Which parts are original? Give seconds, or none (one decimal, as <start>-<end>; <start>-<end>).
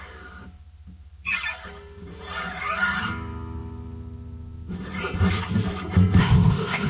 0.0-6.2